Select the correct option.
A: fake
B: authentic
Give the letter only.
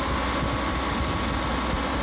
B